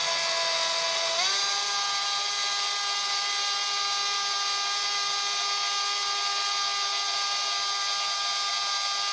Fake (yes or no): no